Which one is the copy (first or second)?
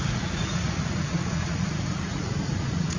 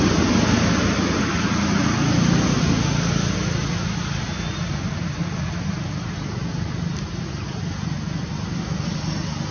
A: first